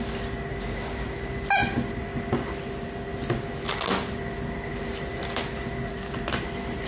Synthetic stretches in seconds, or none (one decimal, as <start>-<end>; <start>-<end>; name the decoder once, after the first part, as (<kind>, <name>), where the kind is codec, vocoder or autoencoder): none